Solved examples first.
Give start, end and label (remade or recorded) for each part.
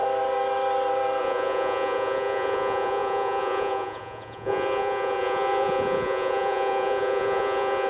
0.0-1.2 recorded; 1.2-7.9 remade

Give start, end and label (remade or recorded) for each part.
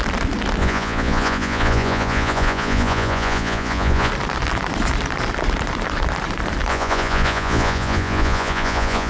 0.0-0.6 recorded; 0.6-4.1 remade; 4.1-6.7 recorded; 6.7-9.1 remade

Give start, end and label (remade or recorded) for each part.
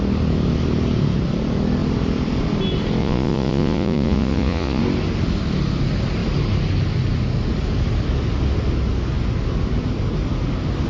0.0-3.0 recorded; 3.0-4.8 remade; 4.8-10.9 recorded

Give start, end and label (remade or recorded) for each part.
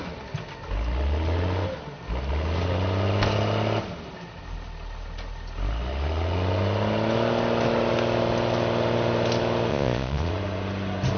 0.0-9.7 recorded; 9.7-10.3 remade; 10.3-11.2 recorded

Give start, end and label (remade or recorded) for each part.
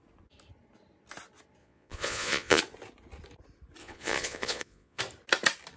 0.0-1.6 recorded; 1.6-2.6 remade; 2.6-3.8 recorded; 3.8-5.0 remade; 5.0-5.8 recorded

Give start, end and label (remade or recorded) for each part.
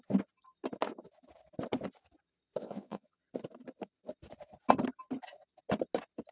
0.0-2.6 recorded; 2.6-3.2 remade; 3.2-6.3 recorded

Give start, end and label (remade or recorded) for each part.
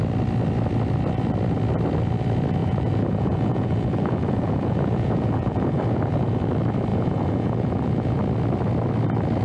0.0-2.6 recorded; 2.6-6.5 remade; 6.5-6.9 recorded; 6.9-8.2 remade; 8.2-9.4 recorded